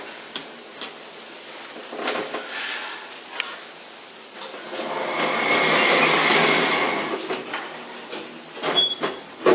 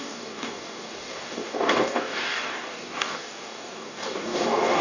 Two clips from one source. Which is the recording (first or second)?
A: first